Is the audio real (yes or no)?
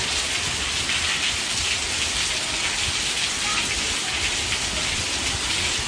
yes